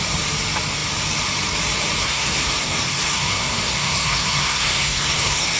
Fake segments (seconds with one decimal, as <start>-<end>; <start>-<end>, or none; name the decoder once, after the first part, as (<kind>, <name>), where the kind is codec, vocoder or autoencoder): 2.0-5.6 (codec, SNAC)